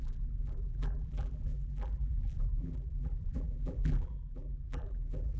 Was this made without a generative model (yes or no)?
no